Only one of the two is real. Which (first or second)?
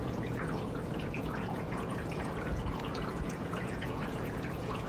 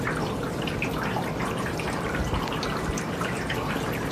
second